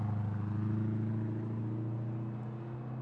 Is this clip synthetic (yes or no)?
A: no